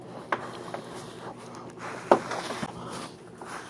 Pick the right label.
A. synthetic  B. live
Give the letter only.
B